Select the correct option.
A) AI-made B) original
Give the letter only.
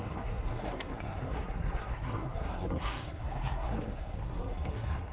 A